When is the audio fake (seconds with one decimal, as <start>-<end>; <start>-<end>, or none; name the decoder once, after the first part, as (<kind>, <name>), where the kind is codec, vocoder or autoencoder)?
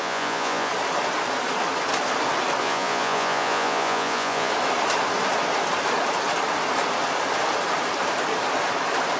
0.0-0.7 (vocoder, Vocos); 2.6-4.5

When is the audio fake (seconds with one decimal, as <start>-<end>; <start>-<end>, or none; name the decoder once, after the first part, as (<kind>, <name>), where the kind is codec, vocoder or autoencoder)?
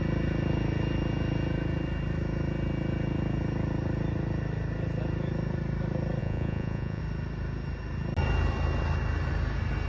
6.2-7.0 (vocoder, Vocos)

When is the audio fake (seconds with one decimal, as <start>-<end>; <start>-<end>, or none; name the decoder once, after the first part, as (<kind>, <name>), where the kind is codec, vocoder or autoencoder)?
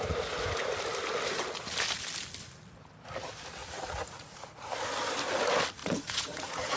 3.6-4.7 (vocoder, Vocos); 5.8-6.8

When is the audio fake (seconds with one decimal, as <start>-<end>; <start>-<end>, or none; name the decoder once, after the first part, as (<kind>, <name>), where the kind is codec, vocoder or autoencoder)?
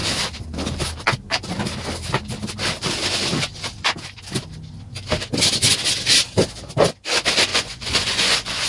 7.5-8.7 (vocoder, Vocos)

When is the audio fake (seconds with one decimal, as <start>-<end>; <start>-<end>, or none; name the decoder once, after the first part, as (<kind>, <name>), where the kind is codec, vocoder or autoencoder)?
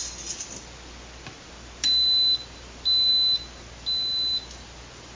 none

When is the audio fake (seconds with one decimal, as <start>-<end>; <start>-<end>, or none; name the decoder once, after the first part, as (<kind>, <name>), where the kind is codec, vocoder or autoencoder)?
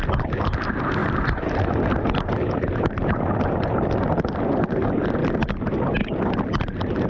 none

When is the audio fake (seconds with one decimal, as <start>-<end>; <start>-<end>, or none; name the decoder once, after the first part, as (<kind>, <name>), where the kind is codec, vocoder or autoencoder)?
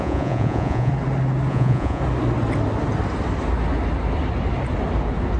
0.0-0.9 (vocoder, Vocos); 1.5-2.0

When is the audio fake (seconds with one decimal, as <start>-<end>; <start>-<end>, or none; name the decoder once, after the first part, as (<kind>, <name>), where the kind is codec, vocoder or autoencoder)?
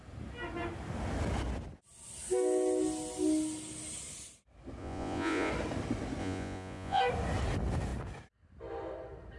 4.8-5.5 (vocoder, Vocos); 6.2-7.0